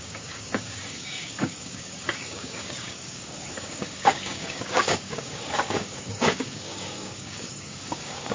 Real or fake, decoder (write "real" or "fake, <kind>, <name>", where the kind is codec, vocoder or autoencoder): fake, codec, DAC